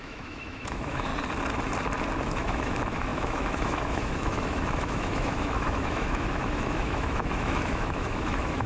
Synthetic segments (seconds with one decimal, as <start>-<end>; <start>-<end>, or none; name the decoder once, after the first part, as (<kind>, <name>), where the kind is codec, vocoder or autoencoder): 0.0-1.1 (autoencoder, DAC-VAE); 2.2-8.7